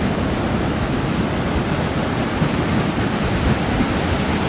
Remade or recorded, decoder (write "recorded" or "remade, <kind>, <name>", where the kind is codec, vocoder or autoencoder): recorded